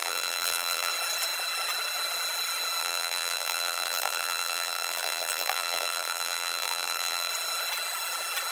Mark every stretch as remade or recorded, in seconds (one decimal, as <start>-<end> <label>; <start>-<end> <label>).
0.0-0.9 remade; 0.9-2.8 recorded; 2.8-7.3 remade; 7.3-8.5 recorded